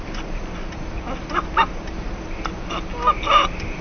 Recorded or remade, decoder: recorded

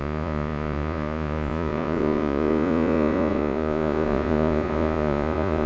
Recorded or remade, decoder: remade, vocoder, Vocos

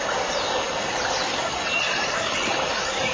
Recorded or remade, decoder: recorded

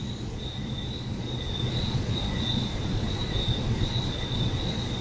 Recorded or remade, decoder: remade, vocoder, Vocos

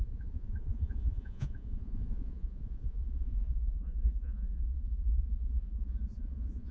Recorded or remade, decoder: remade, vocoder, Vocos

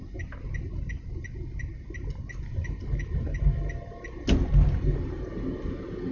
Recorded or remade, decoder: recorded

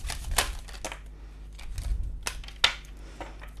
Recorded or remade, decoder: recorded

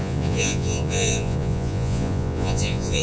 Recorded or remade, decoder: remade, vocoder, Vocos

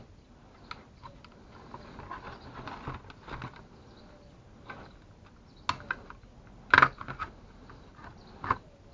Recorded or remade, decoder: recorded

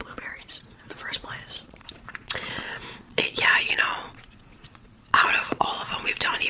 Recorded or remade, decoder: remade, vocoder, Vocos